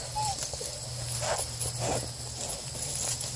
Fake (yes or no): no